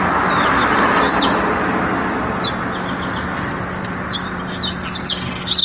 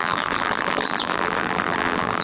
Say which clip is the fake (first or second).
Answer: second